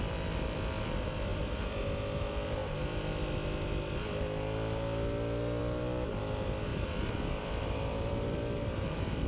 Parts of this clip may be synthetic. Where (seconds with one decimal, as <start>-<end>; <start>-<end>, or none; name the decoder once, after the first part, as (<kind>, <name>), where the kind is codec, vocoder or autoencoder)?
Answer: 1.3-1.8 (vocoder, BigVGAN v2); 2.6-3.2; 6.7-8.4